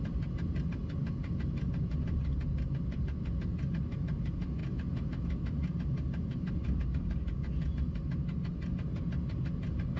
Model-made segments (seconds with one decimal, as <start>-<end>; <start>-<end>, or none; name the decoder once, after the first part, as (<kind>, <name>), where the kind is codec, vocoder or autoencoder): none